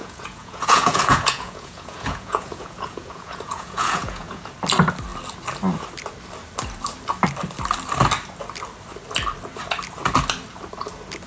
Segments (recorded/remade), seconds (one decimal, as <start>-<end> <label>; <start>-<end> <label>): 0.0-4.5 remade; 4.5-11.3 recorded

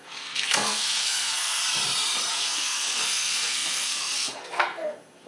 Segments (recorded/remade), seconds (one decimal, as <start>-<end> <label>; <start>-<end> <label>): 0.0-1.6 remade; 1.6-2.3 recorded; 2.3-5.3 remade

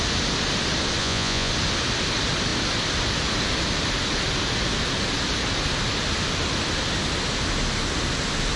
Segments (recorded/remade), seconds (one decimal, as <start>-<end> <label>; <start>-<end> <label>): 0.0-1.0 recorded; 1.0-1.5 remade; 1.5-8.6 recorded

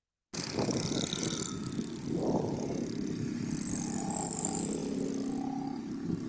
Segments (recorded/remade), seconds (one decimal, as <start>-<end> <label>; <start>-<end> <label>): 0.0-6.3 recorded

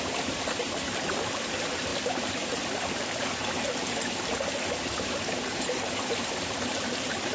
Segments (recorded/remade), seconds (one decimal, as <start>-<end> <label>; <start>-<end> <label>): 0.0-1.9 remade; 1.9-6.0 recorded; 6.0-7.3 remade